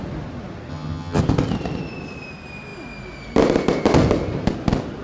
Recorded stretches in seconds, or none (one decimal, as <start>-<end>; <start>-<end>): 0.0-0.7; 1.2-5.0